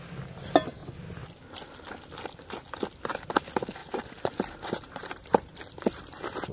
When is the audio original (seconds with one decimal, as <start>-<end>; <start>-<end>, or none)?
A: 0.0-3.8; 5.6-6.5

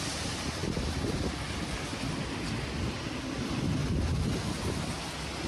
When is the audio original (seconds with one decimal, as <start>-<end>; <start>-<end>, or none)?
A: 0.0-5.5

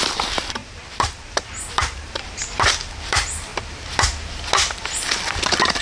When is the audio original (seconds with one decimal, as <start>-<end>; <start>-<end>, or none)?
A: 3.5-5.8